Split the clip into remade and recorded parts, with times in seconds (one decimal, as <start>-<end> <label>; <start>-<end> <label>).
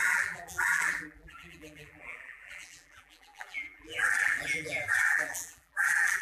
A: 0.0-6.2 remade